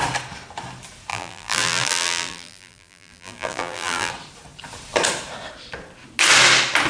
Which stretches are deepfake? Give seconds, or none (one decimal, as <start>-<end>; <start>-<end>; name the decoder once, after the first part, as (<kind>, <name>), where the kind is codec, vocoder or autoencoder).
1.1-4.1 (vocoder, BigVGAN v2)